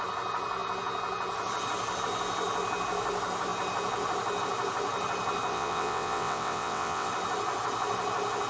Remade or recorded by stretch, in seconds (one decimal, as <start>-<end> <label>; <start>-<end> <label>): 0.0-5.5 recorded; 5.5-7.1 remade; 7.1-8.5 recorded